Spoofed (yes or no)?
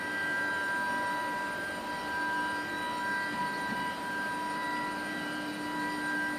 yes